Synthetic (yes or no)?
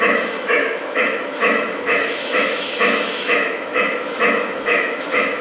yes